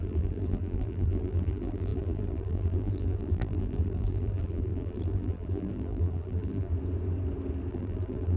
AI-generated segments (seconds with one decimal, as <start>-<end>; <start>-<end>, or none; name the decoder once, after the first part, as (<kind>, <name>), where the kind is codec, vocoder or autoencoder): 0.0-6.7 (vocoder, BigVGAN v2); 7.7-8.4